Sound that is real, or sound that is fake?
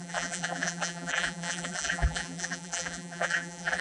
fake